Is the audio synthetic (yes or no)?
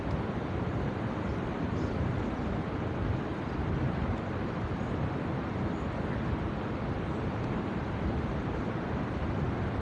yes